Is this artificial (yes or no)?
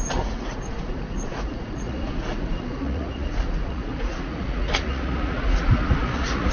yes